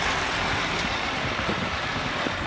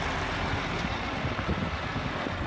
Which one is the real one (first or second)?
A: second